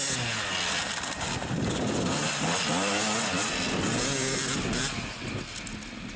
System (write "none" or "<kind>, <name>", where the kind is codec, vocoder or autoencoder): none